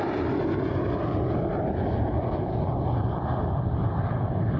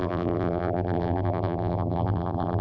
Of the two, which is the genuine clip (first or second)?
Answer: first